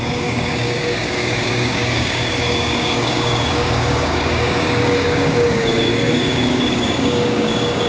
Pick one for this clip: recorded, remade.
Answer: remade